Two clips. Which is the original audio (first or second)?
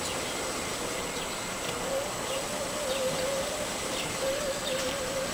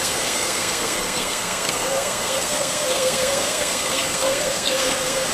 first